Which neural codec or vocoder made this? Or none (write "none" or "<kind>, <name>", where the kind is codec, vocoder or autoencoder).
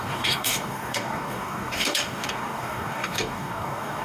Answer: codec, DAC